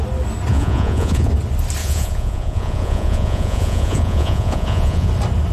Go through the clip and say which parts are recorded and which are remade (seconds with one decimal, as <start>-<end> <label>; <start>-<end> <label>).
0.0-0.5 recorded; 0.5-1.3 remade; 1.3-1.8 recorded; 1.8-5.1 remade; 5.1-5.5 recorded